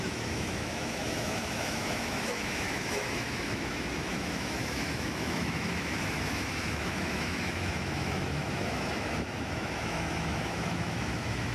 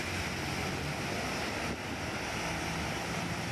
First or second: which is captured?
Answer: second